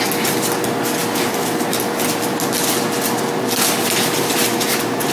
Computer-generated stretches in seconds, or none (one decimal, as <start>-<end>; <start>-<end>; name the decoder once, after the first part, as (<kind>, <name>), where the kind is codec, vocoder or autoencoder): none